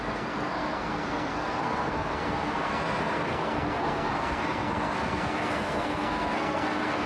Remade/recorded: remade